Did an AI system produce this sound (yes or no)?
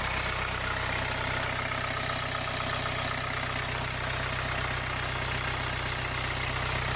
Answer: no